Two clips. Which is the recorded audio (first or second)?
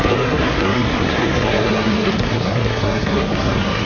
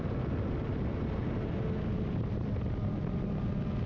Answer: second